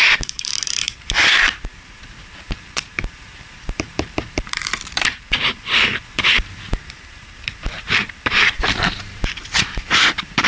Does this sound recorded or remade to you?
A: remade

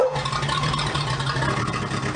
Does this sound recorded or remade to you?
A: recorded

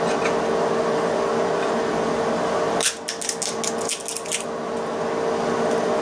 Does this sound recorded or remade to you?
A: recorded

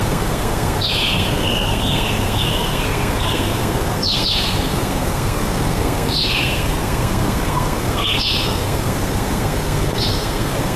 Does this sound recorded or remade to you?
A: remade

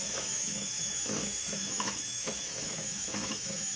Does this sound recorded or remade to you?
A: remade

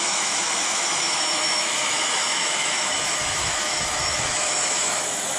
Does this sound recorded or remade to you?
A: remade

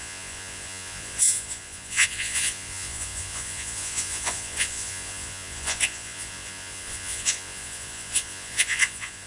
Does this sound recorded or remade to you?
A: remade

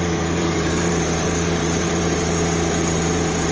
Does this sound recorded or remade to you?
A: remade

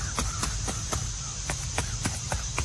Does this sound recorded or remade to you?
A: recorded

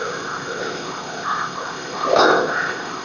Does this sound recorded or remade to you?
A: remade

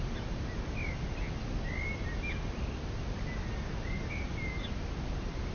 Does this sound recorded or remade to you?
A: recorded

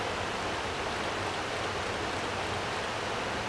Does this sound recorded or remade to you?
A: recorded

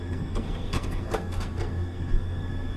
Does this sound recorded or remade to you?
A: remade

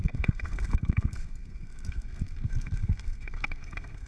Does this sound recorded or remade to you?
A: remade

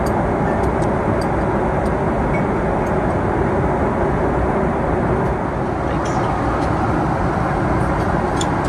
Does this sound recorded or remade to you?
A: recorded